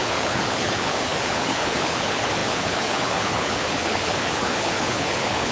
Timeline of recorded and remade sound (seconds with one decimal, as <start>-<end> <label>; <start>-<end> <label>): 0.0-5.5 remade